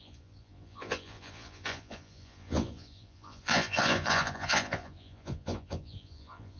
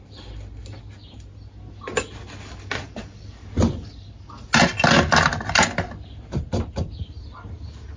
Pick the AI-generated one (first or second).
first